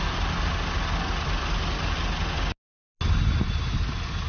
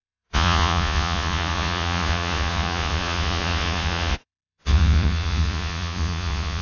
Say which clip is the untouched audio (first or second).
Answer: first